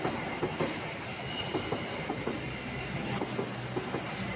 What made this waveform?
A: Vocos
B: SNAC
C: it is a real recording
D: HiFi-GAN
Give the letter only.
C